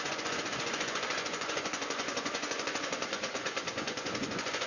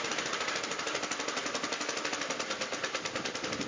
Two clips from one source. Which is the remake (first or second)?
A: first